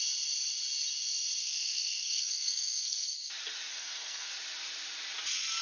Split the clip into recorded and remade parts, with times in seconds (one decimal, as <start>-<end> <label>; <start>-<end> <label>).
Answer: 0.0-1.4 recorded; 1.4-3.3 remade; 3.3-3.7 recorded; 3.7-4.3 remade; 4.3-5.6 recorded